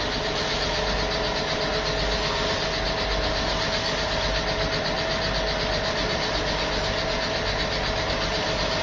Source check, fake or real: real